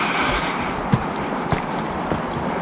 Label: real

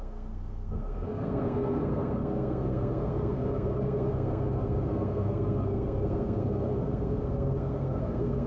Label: fake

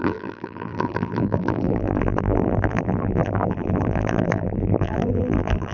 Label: fake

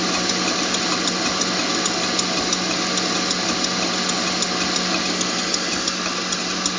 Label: real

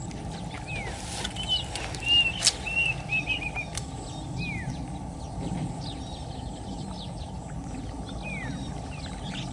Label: real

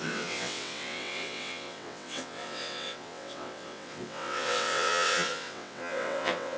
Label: fake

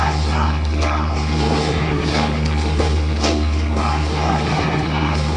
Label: fake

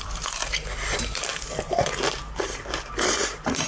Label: fake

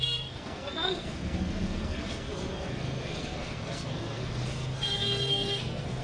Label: fake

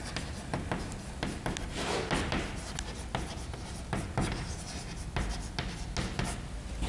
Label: real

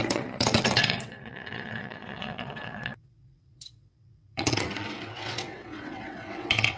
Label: fake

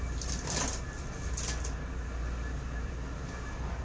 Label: real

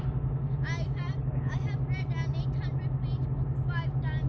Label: real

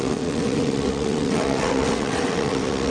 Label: fake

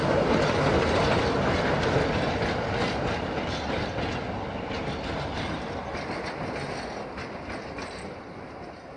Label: real